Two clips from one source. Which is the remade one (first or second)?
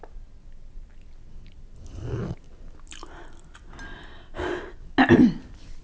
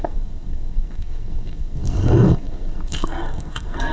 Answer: second